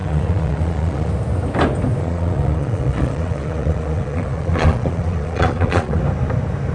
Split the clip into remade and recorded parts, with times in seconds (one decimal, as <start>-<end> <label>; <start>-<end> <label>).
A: 0.0-1.1 remade; 1.1-2.0 recorded; 2.0-6.0 remade; 6.0-6.7 recorded